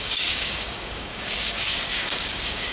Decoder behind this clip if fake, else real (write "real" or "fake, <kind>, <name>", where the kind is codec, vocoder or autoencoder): fake, codec, DAC